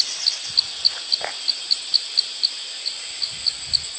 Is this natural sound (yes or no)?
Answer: yes